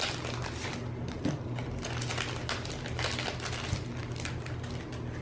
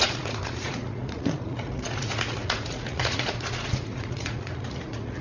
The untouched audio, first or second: first